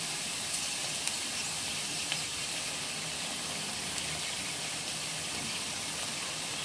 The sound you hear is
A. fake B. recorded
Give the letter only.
B